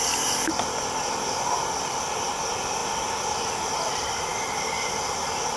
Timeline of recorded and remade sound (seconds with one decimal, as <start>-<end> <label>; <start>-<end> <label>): 0.0-5.6 recorded